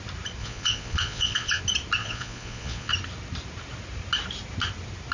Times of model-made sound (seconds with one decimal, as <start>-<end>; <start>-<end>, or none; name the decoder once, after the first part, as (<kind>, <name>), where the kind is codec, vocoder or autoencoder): 0.4-1.6 (vocoder, Vocos); 2.0-2.9